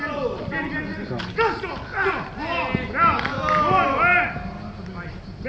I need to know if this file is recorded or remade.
recorded